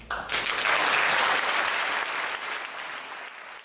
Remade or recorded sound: recorded